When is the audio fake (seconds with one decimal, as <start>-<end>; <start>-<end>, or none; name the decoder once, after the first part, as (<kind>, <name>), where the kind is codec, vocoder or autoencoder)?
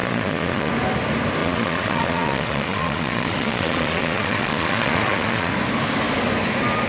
0.0-0.7 (vocoder, Vocos); 1.4-5.5